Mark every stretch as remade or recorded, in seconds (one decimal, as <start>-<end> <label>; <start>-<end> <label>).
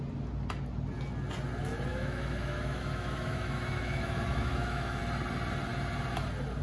0.0-1.9 recorded; 1.9-5.0 remade; 5.0-6.6 recorded